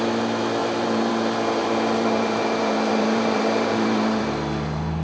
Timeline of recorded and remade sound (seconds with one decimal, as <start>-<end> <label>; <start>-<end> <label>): 0.0-0.6 recorded; 0.6-1.1 remade; 1.1-1.6 recorded; 1.6-4.2 remade; 4.2-5.0 recorded